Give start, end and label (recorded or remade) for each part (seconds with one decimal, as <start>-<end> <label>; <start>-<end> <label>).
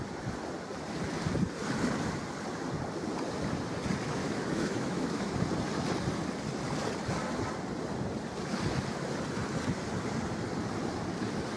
0.0-4.2 recorded; 4.2-5.3 remade; 5.3-11.6 recorded